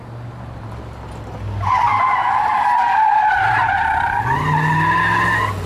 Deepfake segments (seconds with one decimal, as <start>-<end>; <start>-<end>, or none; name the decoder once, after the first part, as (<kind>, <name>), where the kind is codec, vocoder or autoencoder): none